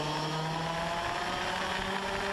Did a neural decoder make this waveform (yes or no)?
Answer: no